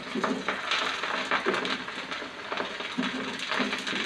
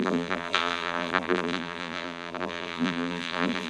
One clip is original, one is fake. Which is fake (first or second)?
second